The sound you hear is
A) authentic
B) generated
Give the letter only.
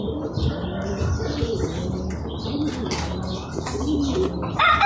A